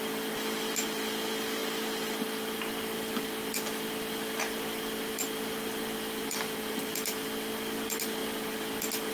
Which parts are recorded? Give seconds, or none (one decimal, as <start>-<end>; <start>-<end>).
0.0-9.1